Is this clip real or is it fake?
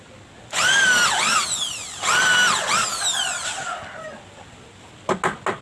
real